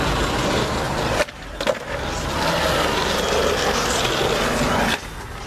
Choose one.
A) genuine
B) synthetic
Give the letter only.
A